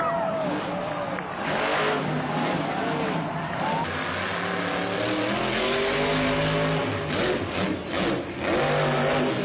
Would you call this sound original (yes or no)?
yes